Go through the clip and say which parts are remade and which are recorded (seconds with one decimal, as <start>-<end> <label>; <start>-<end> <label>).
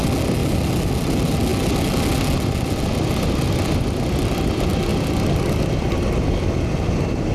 0.0-0.4 recorded; 0.4-0.9 remade; 0.9-7.3 recorded